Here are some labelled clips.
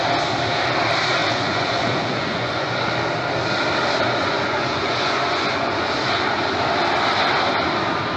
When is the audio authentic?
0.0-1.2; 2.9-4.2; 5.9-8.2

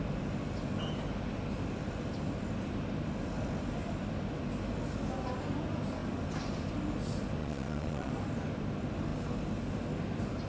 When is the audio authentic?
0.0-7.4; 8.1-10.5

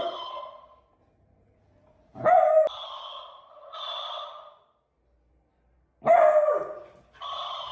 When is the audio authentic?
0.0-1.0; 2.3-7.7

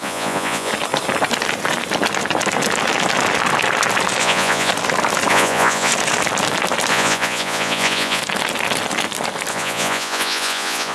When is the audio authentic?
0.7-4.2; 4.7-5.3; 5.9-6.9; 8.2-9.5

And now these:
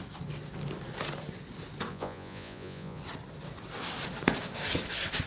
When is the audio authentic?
0.0-1.9; 3.0-5.3